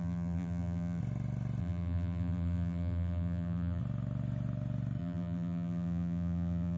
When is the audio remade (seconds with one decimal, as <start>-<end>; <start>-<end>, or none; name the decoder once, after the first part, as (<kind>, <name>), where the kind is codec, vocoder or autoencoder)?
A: 0.0-1.0 (vocoder, BigVGAN v2); 1.6-3.8; 5.0-6.8

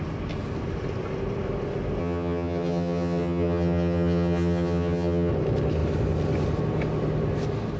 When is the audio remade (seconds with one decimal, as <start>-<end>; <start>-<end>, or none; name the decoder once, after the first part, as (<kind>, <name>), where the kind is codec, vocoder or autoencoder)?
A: 2.0-5.3 (vocoder, HiFi-GAN)

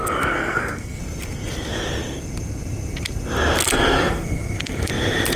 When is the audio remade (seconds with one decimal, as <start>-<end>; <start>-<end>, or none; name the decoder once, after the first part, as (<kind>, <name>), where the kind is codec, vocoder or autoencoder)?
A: 0.0-1.0 (codec, SNAC); 3.6-4.9

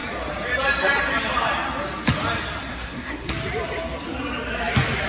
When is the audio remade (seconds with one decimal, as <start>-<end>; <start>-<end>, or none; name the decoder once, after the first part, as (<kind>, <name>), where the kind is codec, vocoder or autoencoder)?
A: 2.7-3.3 (codec, SNAC)

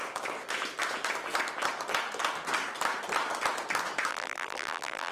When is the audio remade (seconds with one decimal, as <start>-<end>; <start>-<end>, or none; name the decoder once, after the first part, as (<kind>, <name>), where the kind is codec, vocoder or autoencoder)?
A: 4.1-5.1 (vocoder, BigVGAN v2)